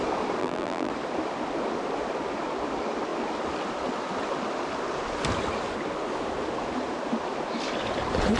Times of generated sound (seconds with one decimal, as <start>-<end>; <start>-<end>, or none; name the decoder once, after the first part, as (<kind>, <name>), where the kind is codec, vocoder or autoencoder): 0.4-0.9 (vocoder, BigVGAN v2)